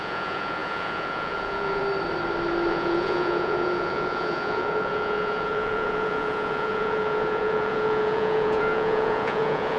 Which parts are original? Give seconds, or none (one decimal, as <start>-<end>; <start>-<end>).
1.8-2.7